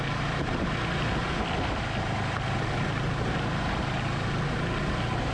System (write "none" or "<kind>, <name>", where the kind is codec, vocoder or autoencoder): none